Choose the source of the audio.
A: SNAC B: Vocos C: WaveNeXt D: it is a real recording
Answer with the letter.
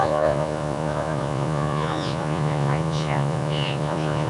B